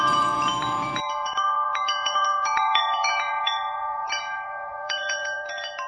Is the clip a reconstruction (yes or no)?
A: yes